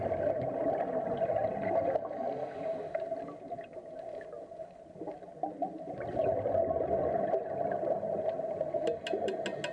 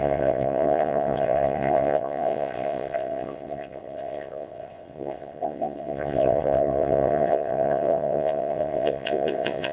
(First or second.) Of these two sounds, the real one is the first